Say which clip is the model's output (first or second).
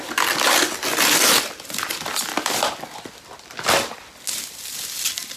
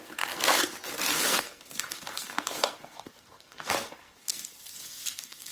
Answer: second